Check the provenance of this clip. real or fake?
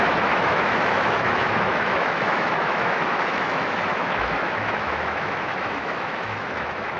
fake